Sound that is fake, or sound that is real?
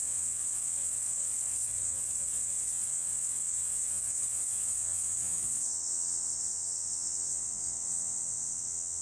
fake